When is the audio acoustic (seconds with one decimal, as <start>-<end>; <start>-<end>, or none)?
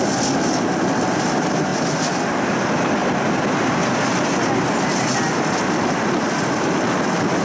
0.0-7.4